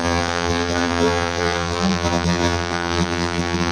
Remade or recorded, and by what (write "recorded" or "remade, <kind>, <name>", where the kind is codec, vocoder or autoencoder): remade, vocoder, BigVGAN v2